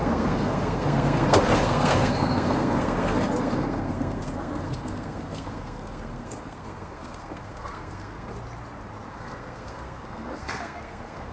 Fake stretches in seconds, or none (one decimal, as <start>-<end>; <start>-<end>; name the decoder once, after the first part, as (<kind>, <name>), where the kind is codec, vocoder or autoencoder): 0.0-8.3 (codec, SNAC); 9.1-11.3